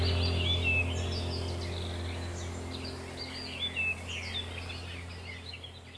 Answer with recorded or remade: recorded